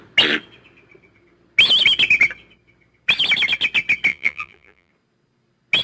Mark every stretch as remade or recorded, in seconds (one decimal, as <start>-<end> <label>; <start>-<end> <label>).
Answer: 0.0-4.1 recorded; 4.1-4.9 remade; 4.9-5.8 recorded